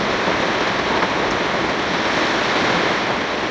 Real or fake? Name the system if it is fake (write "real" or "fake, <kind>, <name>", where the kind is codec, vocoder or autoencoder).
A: real